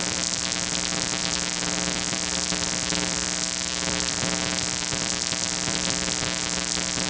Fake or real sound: fake